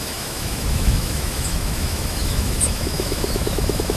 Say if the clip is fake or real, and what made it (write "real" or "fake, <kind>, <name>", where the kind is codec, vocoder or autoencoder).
fake, autoencoder, DAC-VAE